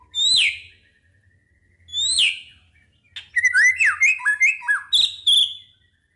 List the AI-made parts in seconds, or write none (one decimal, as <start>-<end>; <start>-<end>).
none